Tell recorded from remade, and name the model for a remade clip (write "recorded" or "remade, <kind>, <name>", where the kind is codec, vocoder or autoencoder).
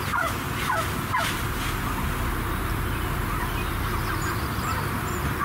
recorded